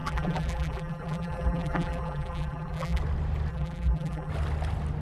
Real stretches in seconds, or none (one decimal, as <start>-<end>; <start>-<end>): 3.0-3.5; 4.3-5.0